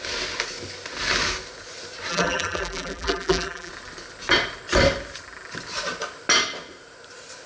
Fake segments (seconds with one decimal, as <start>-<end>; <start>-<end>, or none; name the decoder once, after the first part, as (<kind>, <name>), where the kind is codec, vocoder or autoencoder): 2.1-3.7 (vocoder, BigVGAN v2)